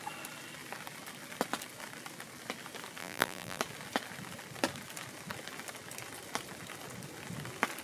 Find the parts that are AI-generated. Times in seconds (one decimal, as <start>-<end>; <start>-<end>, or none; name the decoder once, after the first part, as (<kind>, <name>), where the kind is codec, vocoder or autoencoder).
3.0-3.6 (vocoder, BigVGAN v2)